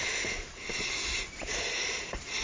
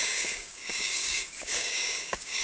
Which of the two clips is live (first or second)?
first